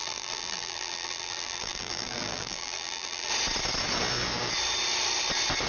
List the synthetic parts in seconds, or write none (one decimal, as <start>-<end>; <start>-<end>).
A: 0.0-3.3